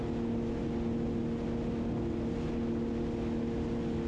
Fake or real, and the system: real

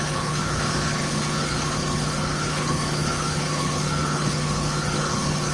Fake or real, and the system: fake, codec, HILCodec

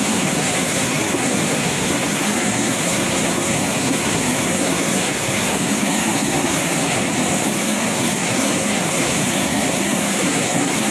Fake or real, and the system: fake, codec, SNAC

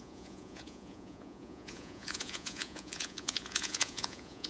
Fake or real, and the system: fake, vocoder, Vocos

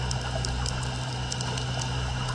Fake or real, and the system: real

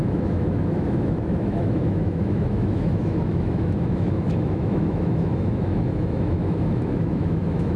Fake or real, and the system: fake, autoencoder, DAC-VAE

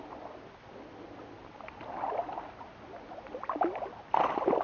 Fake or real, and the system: real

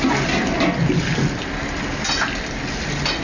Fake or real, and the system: real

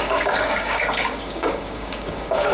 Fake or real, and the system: fake, codec, DAC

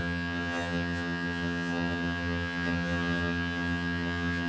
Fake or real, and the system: fake, vocoder, HiFi-GAN